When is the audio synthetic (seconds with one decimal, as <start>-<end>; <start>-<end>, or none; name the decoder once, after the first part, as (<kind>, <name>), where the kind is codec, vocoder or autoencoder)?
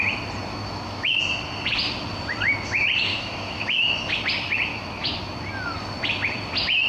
0.5-1.2 (autoencoder, DAC-VAE); 3.1-4.1; 4.7-5.2